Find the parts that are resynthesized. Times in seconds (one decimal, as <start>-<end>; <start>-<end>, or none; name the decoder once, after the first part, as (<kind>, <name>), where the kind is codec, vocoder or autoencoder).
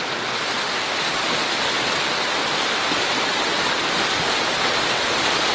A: none